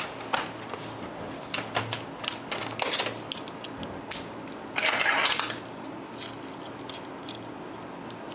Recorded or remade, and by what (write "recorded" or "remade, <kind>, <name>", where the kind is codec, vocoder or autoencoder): recorded